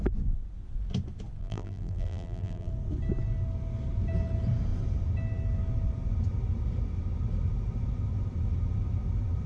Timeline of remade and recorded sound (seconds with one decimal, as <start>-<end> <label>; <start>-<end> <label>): 0.0-1.4 recorded; 1.4-2.7 remade; 2.7-9.5 recorded